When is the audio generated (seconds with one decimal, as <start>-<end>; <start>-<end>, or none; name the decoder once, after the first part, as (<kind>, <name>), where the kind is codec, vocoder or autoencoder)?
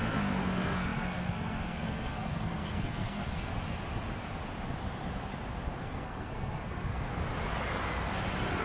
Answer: 0.0-3.5 (codec, SNAC); 5.8-7.1